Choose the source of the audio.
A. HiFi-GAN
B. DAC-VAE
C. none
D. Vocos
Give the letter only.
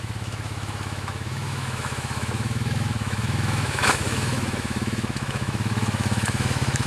B